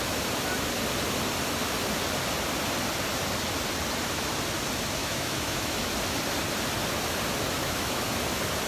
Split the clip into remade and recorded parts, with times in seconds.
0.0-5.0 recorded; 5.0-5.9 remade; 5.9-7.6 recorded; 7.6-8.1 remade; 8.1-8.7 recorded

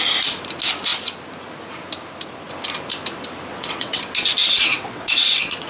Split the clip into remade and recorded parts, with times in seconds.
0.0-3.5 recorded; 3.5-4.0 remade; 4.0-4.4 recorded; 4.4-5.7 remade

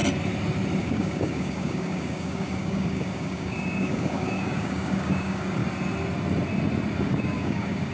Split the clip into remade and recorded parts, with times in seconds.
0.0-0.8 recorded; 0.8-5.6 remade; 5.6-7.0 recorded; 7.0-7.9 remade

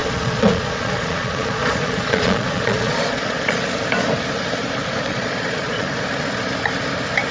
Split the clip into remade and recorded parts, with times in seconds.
0.0-3.6 remade; 3.6-5.1 recorded; 5.1-5.9 remade; 5.9-7.3 recorded